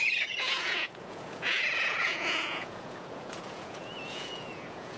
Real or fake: fake